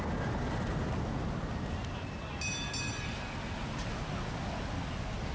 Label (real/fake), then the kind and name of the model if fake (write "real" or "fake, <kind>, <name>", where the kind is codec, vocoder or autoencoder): real